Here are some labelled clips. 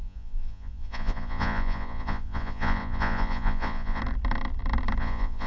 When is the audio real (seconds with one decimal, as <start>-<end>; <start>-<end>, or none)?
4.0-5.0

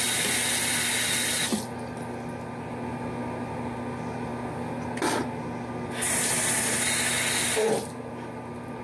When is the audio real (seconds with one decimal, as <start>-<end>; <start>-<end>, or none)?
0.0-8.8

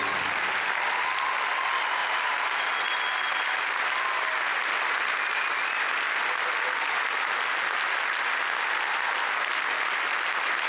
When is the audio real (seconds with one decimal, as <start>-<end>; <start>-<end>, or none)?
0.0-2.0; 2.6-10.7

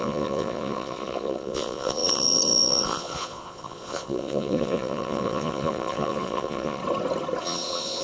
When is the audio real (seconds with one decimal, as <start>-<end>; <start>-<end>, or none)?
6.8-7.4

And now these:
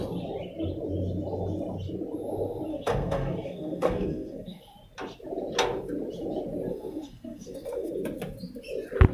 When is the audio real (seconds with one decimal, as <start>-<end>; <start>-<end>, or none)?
0.0-2.7; 4.6-6.7; 7.9-9.1

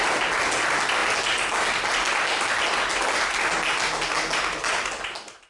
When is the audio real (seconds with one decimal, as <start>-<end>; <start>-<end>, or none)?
0.0-5.5